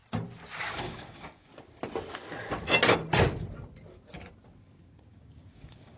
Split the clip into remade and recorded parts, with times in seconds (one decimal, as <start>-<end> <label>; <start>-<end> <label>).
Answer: 0.0-0.7 recorded; 0.7-1.5 remade; 1.5-5.1 recorded; 5.1-6.0 remade